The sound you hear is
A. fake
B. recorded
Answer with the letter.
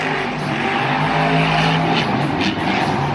B